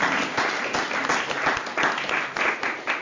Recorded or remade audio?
recorded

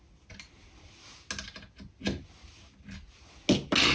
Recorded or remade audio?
recorded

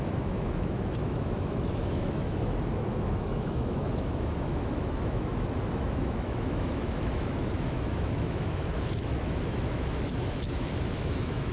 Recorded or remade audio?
remade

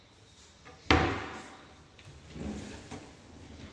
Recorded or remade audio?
recorded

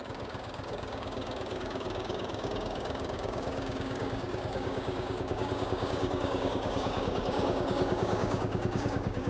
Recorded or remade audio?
remade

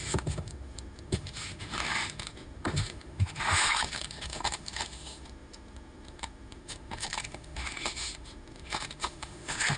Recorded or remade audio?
remade